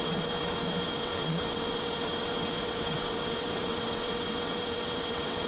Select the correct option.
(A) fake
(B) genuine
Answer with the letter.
A